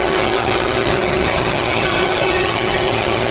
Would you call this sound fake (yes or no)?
yes